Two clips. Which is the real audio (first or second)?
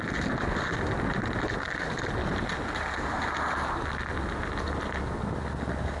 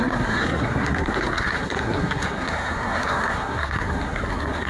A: first